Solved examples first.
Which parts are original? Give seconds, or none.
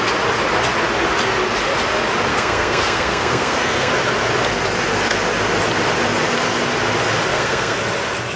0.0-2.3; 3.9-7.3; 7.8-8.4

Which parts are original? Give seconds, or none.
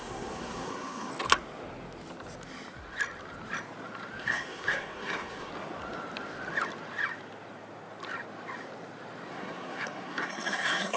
1.1-4.2; 5.5-9.3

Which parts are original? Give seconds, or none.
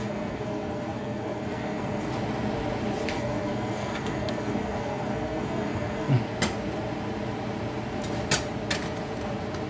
2.1-3.1; 6.1-9.7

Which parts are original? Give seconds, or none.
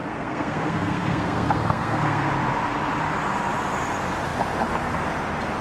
2.3-5.6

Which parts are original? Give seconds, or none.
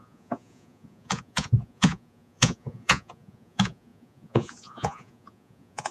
none